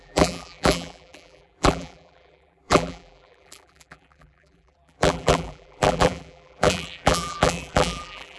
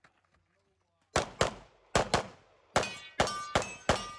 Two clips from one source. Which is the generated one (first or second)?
first